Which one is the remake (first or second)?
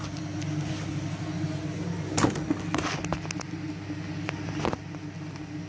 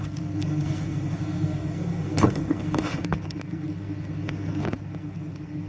second